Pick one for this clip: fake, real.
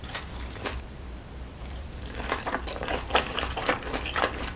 fake